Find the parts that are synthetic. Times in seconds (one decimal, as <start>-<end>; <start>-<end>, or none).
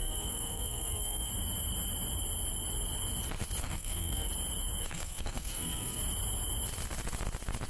0.0-1.3; 3.6-4.3; 4.8-6.0